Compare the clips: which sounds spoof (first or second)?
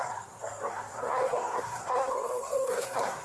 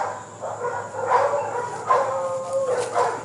first